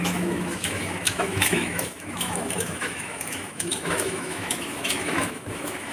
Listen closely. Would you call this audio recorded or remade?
remade